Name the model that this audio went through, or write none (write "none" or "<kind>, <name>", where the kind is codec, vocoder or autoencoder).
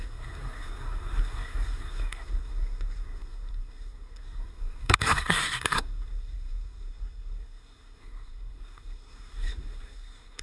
codec, SNAC